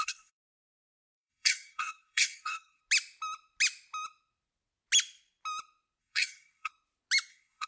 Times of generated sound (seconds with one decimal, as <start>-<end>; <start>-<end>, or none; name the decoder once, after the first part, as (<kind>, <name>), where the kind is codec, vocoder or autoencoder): 0.0-2.8 (codec, SNAC); 6.0-6.7; 7.3-7.7